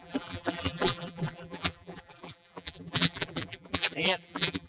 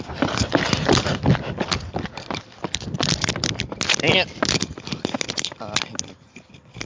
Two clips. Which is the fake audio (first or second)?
first